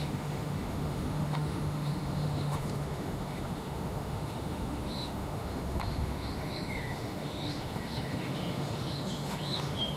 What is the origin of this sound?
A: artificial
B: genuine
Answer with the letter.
A